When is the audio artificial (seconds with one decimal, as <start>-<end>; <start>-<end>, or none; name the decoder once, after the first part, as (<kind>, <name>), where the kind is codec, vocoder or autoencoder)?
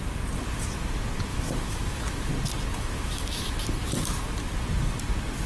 1.3-2.3 (autoencoder, DAC-VAE); 2.7-3.6